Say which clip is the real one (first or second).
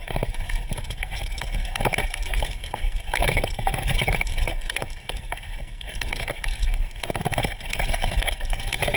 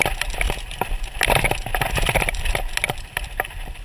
second